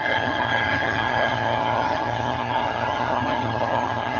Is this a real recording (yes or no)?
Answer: no